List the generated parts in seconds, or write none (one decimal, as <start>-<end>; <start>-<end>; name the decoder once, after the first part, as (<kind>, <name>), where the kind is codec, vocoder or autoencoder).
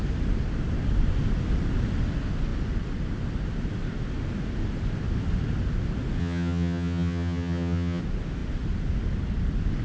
6.2-8.0 (vocoder, HiFi-GAN)